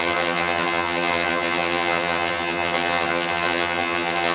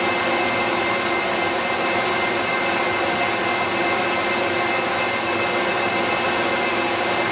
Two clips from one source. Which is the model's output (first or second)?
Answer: first